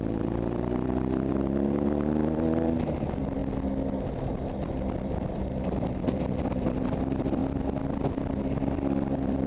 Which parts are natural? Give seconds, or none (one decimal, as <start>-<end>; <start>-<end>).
3.4-4.1; 7.4-8.1